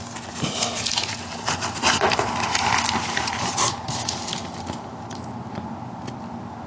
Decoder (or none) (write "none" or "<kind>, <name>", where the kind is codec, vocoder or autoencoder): none